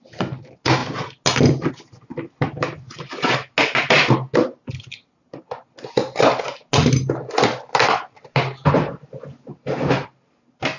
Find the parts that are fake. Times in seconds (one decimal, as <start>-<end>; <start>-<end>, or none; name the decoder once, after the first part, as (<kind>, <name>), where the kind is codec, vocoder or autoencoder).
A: none